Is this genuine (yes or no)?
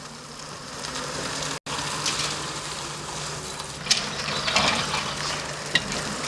yes